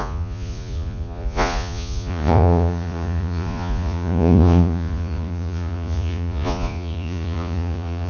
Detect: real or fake fake